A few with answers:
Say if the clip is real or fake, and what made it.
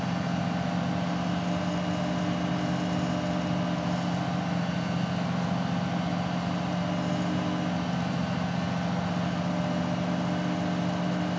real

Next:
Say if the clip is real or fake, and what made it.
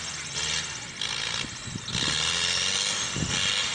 real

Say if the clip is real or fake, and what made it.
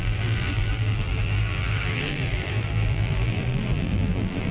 fake, vocoder, BigVGAN v2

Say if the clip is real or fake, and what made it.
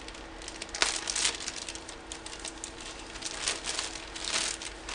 real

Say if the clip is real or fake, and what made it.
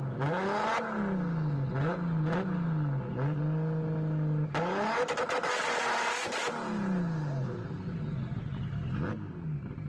real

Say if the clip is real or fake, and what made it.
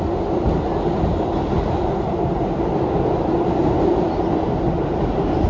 real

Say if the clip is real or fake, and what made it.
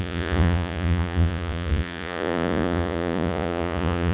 fake, vocoder, Vocos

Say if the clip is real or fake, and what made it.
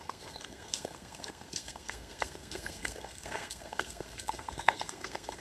fake, codec, SNAC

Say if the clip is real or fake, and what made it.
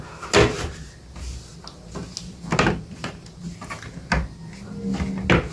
real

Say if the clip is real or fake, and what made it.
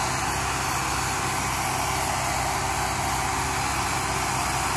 real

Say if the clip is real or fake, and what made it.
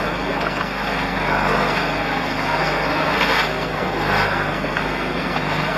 fake, codec, SNAC